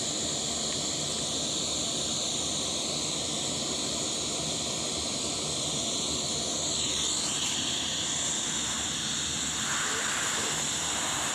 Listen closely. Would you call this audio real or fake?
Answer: real